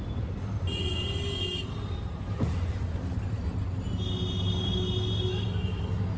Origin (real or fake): real